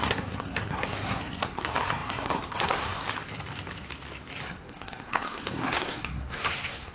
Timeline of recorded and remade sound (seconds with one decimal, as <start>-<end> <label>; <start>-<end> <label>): 0.0-3.0 remade; 3.0-4.4 recorded; 4.4-6.9 remade